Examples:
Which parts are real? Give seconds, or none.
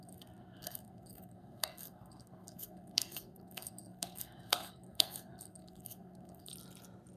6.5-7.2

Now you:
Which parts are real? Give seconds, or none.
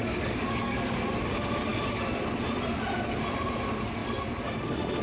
1.1-5.0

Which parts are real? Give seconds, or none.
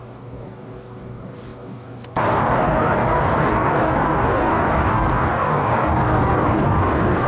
none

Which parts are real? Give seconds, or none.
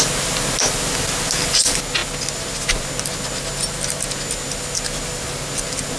0.0-6.0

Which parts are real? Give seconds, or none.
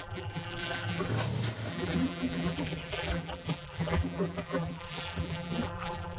1.1-1.7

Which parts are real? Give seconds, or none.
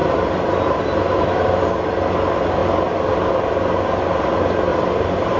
0.8-4.7